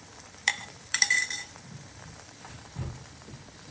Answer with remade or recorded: remade